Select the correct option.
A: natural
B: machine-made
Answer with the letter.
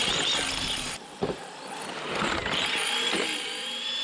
A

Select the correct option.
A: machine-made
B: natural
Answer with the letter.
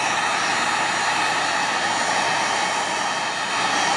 B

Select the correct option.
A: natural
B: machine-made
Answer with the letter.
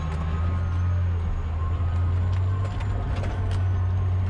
A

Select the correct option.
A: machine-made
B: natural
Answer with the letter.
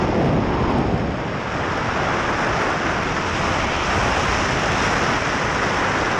B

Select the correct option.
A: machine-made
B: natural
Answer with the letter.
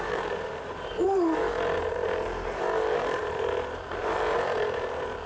A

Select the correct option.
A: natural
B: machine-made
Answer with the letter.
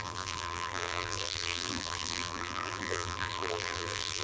B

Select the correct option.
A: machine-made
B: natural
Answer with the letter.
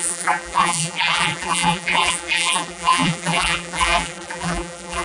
A